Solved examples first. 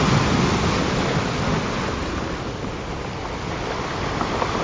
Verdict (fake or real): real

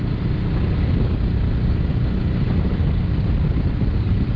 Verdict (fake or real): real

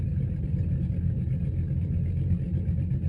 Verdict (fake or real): real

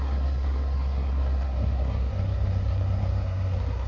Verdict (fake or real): fake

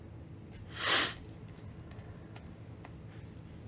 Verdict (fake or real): real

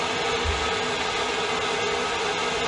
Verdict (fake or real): real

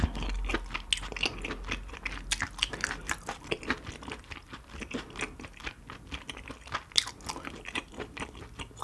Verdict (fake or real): real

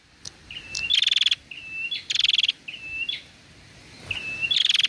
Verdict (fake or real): real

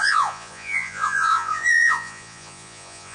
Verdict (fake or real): fake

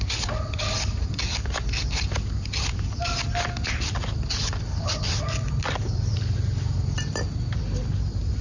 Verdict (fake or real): real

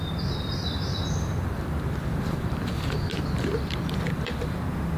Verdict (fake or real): fake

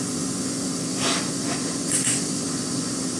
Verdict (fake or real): fake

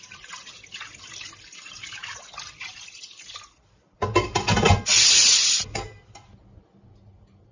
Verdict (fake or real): real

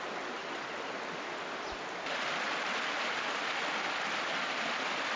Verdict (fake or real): real